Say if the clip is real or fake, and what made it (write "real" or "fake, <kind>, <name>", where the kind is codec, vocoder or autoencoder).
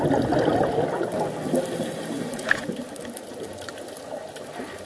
real